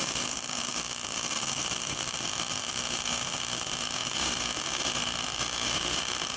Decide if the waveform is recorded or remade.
remade